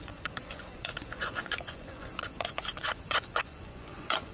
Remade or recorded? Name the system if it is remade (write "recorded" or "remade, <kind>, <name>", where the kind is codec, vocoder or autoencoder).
remade, vocoder, Vocos